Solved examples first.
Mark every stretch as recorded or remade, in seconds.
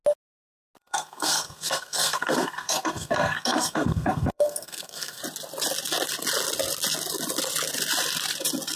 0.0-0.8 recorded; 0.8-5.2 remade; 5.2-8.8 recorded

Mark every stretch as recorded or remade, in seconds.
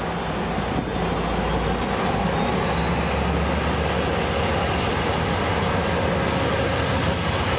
0.0-7.6 recorded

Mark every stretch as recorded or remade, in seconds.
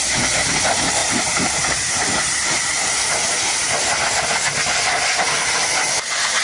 0.0-1.0 recorded; 1.0-2.9 remade; 2.9-6.4 recorded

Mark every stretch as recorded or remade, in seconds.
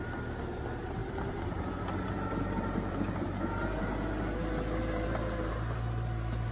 0.0-1.0 recorded; 1.0-3.8 remade; 3.8-6.5 recorded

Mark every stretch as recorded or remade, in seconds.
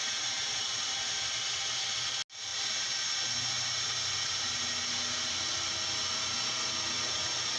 0.0-7.6 recorded